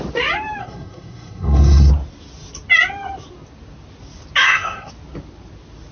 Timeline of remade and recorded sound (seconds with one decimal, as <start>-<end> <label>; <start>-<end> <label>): 0.0-0.6 recorded; 0.6-1.9 remade; 1.9-4.4 recorded; 4.4-4.9 remade; 4.9-5.9 recorded